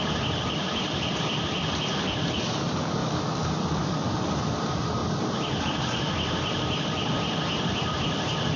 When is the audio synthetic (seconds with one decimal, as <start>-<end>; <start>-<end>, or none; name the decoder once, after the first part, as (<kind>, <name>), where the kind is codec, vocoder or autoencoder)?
none